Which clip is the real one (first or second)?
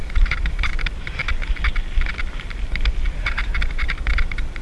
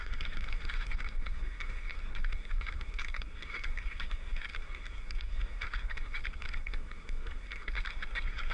first